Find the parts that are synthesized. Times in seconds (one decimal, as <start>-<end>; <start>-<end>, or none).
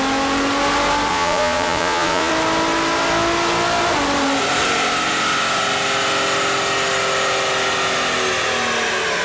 1.1-2.3